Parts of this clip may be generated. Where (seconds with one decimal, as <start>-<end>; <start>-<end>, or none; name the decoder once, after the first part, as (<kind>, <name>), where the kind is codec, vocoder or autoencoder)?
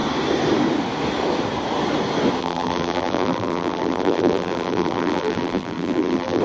2.4-6.4 (vocoder, BigVGAN v2)